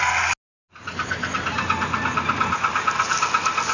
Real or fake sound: real